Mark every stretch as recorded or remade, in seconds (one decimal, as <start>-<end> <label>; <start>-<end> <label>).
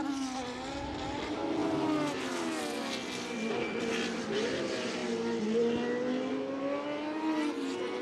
0.0-8.0 recorded